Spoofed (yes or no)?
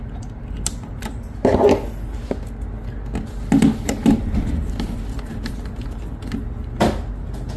no